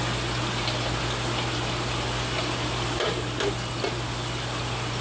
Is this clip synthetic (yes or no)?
no